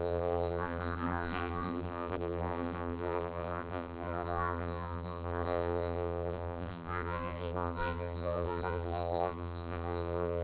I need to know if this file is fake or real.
fake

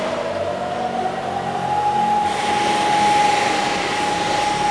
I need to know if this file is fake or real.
real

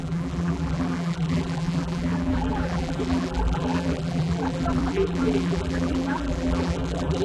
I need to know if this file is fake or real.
fake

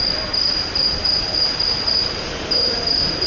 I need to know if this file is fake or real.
fake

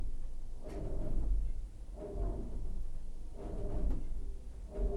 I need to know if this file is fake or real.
real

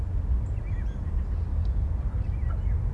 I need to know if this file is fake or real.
real